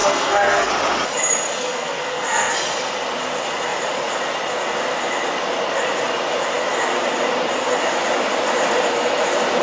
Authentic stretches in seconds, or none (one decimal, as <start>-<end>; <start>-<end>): 0.7-1.6; 2.5-9.6